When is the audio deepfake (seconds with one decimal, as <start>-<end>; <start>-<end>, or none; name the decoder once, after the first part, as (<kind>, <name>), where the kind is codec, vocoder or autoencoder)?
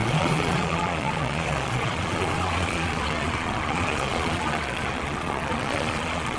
0.0-6.4 (vocoder, Vocos)